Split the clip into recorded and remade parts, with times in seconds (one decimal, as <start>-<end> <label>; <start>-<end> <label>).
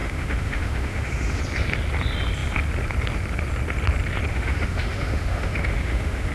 0.0-1.4 remade; 1.4-4.3 recorded; 4.3-6.3 remade